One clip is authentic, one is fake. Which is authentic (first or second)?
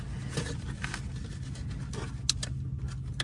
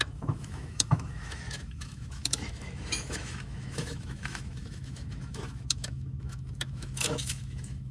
first